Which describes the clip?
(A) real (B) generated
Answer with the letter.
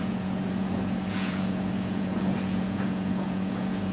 B